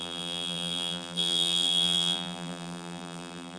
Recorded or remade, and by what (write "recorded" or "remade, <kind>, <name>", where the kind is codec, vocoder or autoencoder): remade, vocoder, BigVGAN v2